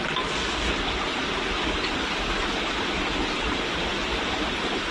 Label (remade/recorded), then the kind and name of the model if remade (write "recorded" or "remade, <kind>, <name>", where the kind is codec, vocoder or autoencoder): recorded